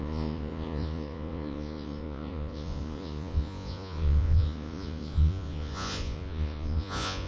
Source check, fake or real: fake